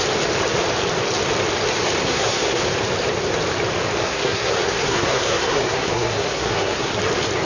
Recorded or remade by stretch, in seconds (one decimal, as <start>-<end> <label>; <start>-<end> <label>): 0.0-2.0 recorded; 2.0-2.6 remade; 2.6-4.0 recorded; 4.0-6.9 remade; 6.9-7.5 recorded